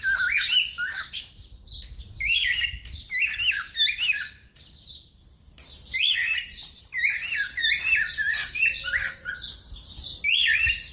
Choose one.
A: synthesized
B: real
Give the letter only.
B